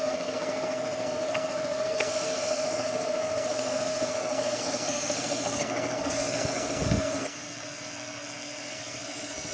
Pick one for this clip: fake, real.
fake